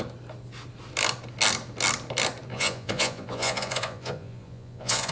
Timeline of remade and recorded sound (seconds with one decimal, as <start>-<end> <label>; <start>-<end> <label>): 0.0-2.5 recorded; 2.5-5.1 remade